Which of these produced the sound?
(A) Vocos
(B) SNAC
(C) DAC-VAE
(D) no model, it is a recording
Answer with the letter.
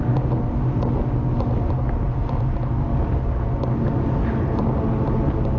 D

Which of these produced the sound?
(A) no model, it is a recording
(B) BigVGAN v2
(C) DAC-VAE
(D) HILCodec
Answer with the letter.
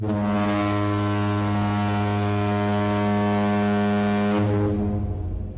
A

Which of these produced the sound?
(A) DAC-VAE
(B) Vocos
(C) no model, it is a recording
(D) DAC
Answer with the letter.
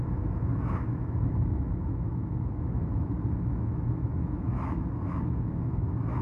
A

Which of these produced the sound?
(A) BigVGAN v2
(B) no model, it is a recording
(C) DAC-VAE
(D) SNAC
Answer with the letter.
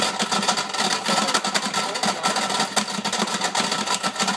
B